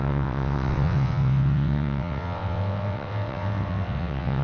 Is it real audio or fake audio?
fake